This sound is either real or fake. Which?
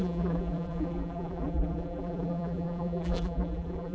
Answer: fake